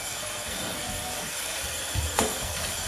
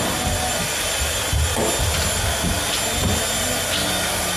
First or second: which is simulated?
first